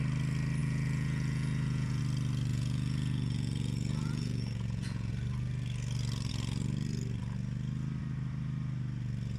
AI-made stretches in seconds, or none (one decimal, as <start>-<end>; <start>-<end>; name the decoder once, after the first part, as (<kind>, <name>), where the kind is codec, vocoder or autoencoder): 0.6-2.0 (vocoder, Vocos); 2.5-5.1